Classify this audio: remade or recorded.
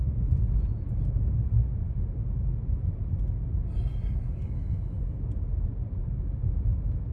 recorded